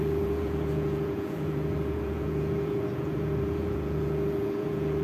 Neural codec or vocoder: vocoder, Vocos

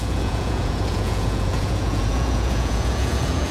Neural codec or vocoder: vocoder, Vocos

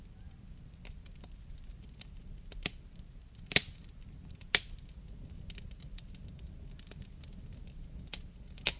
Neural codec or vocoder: none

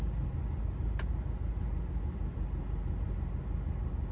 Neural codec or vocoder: none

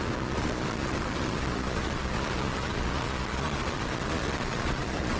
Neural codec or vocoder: vocoder, Vocos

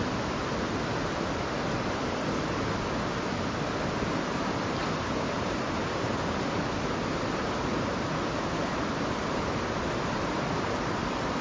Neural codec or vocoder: none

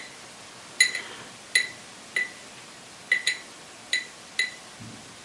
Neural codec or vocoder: none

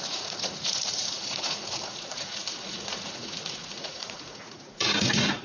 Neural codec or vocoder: vocoder, Vocos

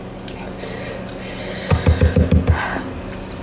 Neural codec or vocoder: none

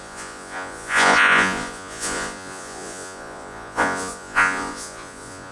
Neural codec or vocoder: vocoder, Vocos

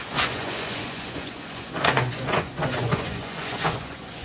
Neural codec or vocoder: vocoder, Vocos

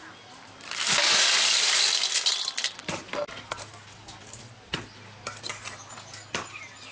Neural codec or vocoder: none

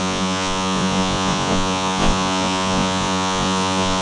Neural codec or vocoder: vocoder, Vocos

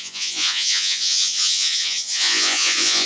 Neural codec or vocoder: vocoder, Vocos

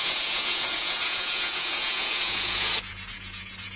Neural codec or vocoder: vocoder, Vocos